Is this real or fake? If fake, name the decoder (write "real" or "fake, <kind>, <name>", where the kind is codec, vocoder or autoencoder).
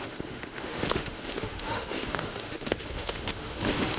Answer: fake, autoencoder, DAC-VAE